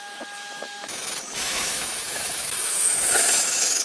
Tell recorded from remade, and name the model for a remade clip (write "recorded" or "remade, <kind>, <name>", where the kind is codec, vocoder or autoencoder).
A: remade, autoencoder, DAC-VAE